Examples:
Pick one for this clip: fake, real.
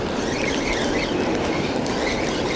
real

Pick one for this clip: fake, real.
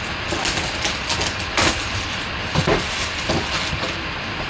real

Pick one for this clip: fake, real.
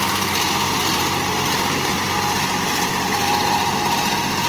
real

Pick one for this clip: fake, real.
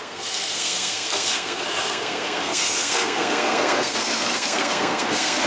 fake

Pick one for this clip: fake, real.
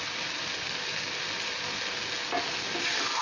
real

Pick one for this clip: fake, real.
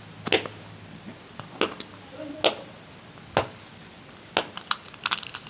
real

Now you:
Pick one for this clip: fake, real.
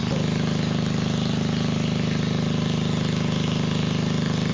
real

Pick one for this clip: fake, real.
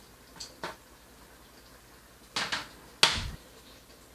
real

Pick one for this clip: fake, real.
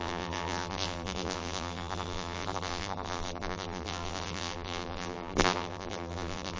fake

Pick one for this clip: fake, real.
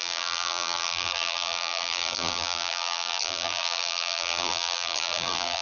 fake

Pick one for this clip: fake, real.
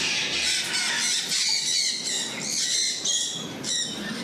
real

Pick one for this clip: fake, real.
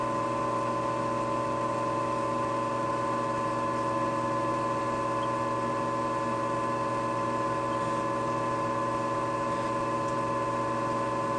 real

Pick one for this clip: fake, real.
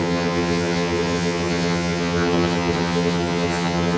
fake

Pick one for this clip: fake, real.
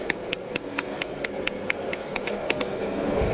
fake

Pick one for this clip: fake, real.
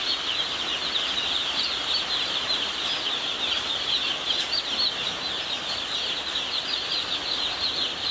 real